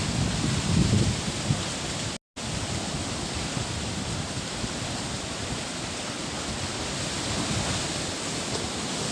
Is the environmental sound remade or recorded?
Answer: recorded